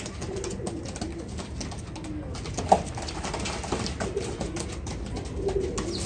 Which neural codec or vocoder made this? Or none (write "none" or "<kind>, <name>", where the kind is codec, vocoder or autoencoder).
none